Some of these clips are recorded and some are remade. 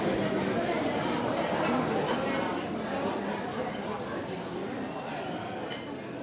remade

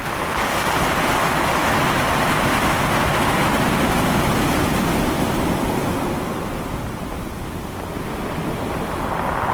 recorded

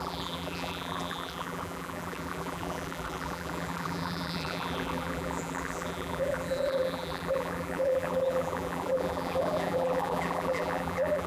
remade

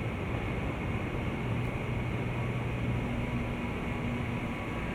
recorded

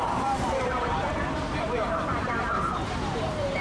remade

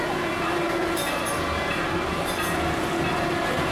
remade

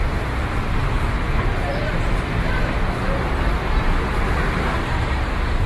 remade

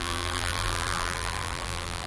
remade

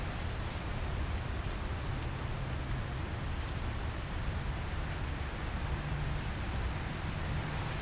recorded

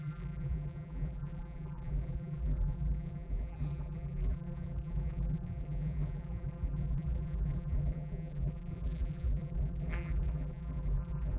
remade